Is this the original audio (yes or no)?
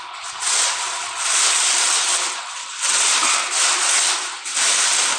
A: yes